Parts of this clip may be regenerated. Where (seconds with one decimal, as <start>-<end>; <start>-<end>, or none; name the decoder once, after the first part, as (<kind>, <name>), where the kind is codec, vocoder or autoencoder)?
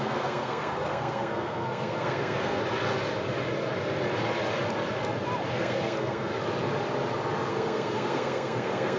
0.0-2.6 (codec, SNAC); 5.5-6.3; 7.5-9.0